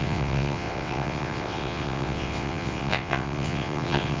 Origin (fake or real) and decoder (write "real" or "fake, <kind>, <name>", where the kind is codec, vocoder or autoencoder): fake, vocoder, WaveNeXt